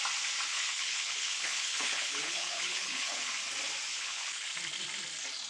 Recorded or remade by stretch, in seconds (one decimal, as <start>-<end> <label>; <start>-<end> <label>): 0.0-0.5 recorded; 0.5-3.3 remade; 3.3-3.9 recorded; 3.9-4.5 remade; 4.5-5.5 recorded